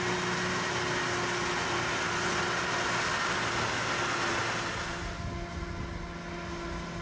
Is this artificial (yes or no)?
no